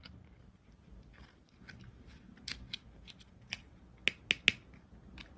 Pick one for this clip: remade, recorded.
recorded